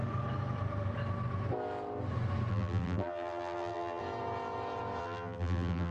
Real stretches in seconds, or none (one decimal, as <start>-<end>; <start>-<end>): 0.0-2.5; 4.0-5.0